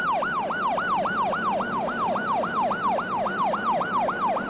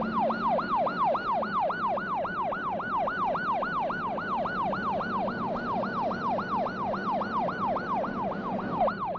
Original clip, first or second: second